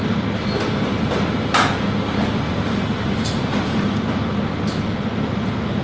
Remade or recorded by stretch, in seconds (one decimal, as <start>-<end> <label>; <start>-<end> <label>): 0.0-5.8 recorded